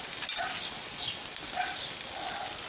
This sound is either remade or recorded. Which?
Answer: recorded